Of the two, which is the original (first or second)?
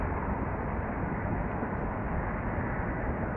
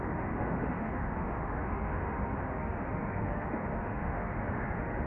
first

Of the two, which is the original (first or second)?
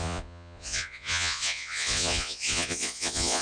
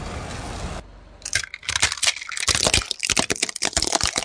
second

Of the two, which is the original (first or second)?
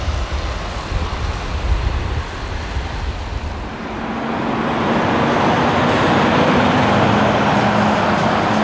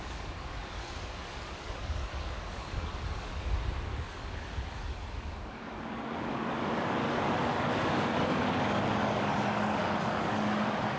first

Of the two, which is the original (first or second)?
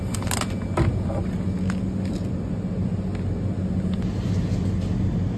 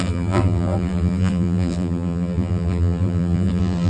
first